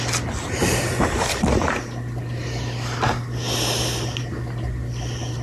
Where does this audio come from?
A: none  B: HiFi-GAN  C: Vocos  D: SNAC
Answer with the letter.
A